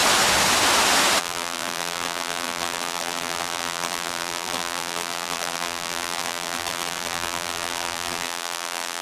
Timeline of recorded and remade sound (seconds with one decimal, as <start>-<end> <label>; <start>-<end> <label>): 0.0-1.2 recorded; 1.2-9.0 remade